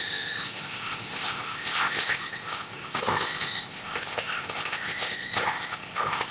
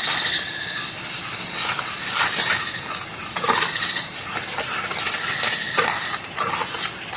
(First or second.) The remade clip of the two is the first